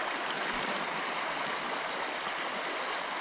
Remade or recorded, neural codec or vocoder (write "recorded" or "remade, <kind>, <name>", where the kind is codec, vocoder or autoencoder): recorded